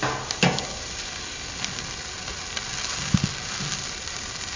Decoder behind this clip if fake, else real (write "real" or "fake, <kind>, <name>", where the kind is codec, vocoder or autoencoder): real